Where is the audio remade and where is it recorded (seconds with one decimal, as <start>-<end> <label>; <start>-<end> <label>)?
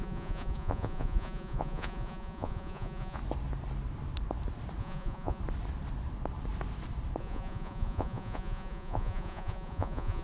0.0-3.2 remade; 3.2-4.8 recorded; 4.8-5.4 remade; 5.4-7.2 recorded; 7.2-10.2 remade